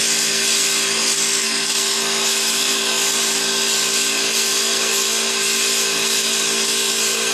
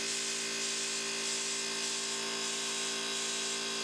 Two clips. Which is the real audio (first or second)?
second